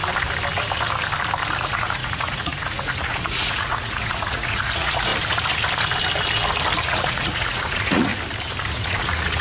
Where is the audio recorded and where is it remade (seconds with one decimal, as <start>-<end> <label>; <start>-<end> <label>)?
0.0-1.6 recorded; 1.6-5.1 remade; 5.1-6.8 recorded; 6.8-8.1 remade; 8.1-8.7 recorded; 8.7-9.4 remade